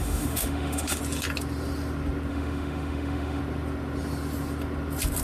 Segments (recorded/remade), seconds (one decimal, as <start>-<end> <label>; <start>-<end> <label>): 0.0-1.0 remade; 1.0-2.3 recorded; 2.3-3.4 remade; 3.4-5.2 recorded